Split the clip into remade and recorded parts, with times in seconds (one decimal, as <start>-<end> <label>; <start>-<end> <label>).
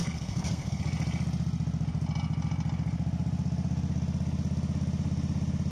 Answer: 0.0-0.8 remade; 0.8-5.7 recorded